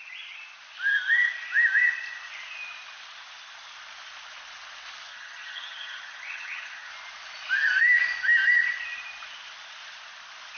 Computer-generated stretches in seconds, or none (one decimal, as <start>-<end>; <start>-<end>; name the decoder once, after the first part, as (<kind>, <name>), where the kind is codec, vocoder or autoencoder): 5.1-6.9 (vocoder, HiFi-GAN)